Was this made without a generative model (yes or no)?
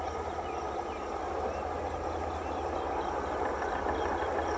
yes